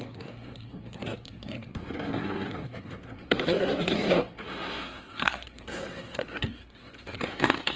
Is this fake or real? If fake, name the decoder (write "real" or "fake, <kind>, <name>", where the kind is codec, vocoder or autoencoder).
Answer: fake, codec, SNAC